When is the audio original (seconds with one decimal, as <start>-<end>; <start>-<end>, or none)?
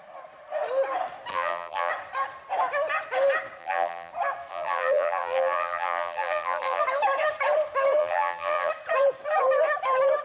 0.0-1.3; 1.9-3.6; 4.1-4.5; 6.8-8.0; 8.7-10.2